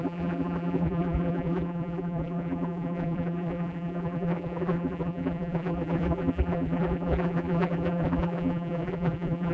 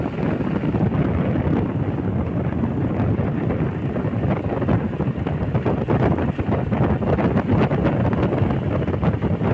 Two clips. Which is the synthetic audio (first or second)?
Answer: first